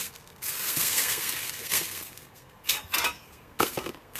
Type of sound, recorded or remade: remade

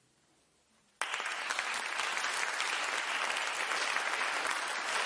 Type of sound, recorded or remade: recorded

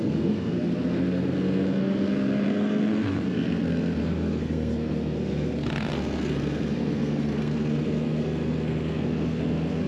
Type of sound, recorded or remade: remade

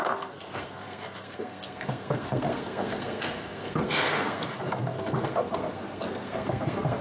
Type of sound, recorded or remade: remade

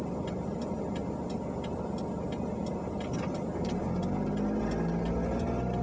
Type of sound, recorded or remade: recorded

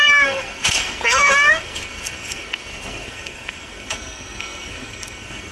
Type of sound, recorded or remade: remade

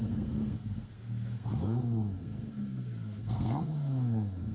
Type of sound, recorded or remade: remade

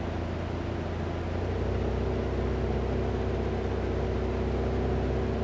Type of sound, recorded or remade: recorded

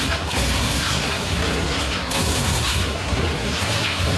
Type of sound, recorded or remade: remade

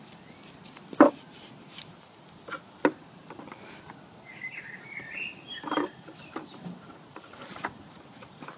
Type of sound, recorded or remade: recorded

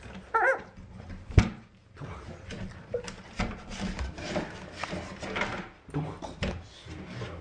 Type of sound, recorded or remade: recorded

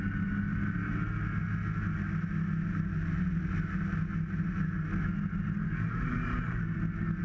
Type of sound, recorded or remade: recorded